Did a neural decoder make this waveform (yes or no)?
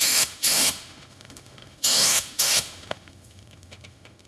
yes